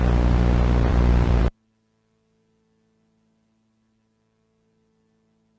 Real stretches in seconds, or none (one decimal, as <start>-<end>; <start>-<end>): 0.0-0.9; 1.4-5.6